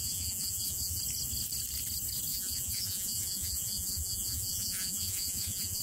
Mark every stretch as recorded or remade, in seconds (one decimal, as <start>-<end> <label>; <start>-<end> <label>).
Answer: 0.0-1.0 remade; 1.0-2.3 recorded; 2.3-5.8 remade